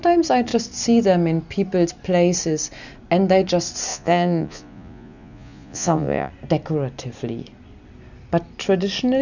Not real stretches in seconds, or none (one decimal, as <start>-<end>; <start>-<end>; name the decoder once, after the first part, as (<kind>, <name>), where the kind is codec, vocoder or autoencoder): 3.9-6.3 (vocoder, Vocos)